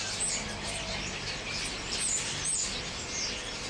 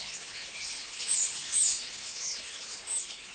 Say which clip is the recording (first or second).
first